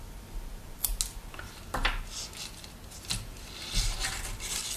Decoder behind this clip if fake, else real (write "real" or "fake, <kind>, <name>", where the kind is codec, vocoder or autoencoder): real